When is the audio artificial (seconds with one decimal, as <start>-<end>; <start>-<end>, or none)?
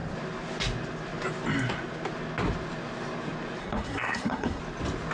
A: 3.6-4.6